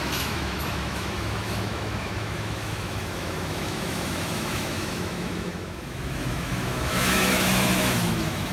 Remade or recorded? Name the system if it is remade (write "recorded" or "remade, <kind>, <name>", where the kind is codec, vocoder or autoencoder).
remade, autoencoder, DAC-VAE